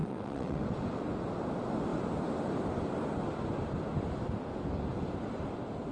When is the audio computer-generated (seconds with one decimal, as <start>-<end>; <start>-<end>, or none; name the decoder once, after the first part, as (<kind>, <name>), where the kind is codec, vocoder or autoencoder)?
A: 0.0-0.6 (vocoder, WaveNeXt)